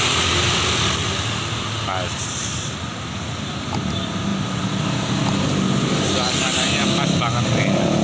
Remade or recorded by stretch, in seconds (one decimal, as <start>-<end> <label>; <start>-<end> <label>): 0.0-8.0 recorded